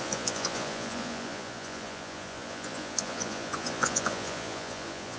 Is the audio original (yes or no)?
no